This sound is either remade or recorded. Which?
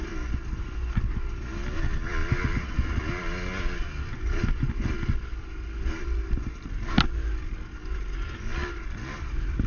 recorded